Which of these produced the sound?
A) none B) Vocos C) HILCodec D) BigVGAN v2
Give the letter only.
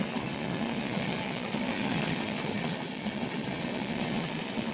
B